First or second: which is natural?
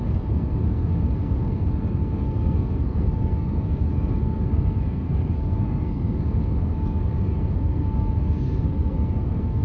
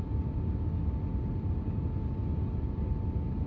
second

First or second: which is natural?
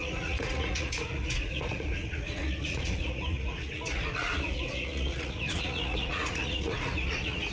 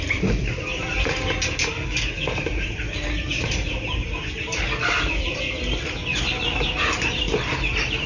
second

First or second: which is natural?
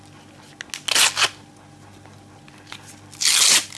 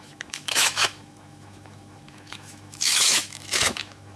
first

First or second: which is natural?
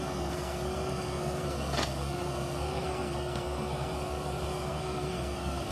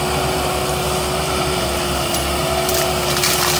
second